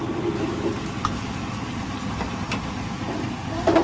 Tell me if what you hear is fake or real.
real